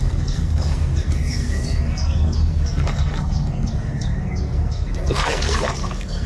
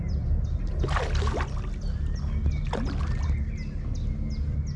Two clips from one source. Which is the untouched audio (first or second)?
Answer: second